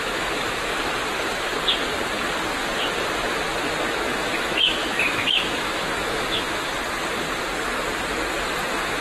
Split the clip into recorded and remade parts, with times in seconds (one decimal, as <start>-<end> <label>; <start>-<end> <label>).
0.0-0.7 remade; 0.7-3.7 recorded; 3.7-6.7 remade; 6.7-8.6 recorded; 8.6-9.0 remade